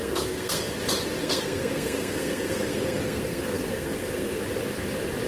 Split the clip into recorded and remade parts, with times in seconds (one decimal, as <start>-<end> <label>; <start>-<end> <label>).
0.0-0.6 remade; 0.6-1.2 recorded; 1.2-4.4 remade; 4.4-5.3 recorded